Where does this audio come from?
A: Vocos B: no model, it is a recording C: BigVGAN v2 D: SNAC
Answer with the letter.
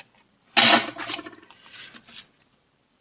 B